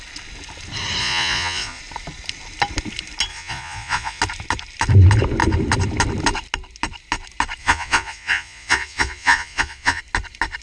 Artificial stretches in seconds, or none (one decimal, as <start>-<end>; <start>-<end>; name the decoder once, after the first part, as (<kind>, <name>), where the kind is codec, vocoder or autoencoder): 1.0-1.8 (vocoder, Vocos); 3.3-4.2; 7.6-10.0